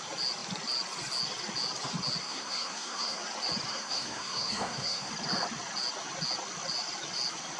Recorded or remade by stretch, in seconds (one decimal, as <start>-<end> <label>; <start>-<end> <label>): 0.0-2.2 recorded; 2.2-3.2 remade; 3.2-3.7 recorded; 3.7-5.1 remade; 5.1-7.6 recorded